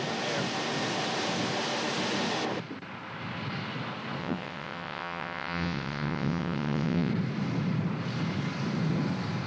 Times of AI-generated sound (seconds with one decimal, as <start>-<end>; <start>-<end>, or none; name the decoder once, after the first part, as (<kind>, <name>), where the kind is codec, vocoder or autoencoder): 4.2-7.1 (vocoder, WaveNeXt)